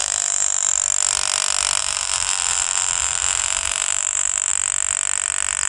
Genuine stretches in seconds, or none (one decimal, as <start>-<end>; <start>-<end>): 0.7-1.8; 4.5-5.7